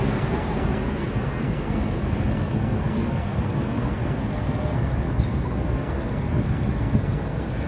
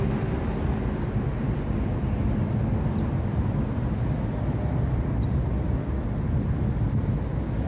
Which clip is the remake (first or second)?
first